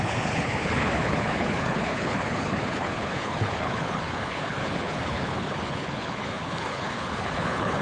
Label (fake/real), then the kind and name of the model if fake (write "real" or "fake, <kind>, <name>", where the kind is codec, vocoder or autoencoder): fake, codec, HILCodec